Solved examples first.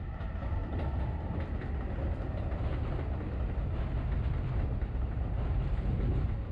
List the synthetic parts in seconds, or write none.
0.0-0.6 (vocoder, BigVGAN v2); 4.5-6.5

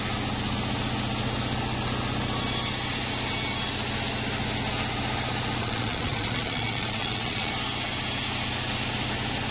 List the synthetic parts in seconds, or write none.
5.6-7.5 (vocoder, Vocos)

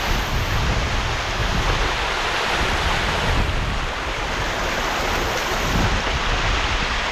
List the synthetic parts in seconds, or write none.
none

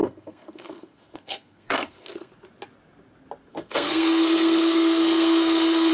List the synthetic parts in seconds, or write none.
0.0-2.3 (codec, SNAC); 3.5-5.9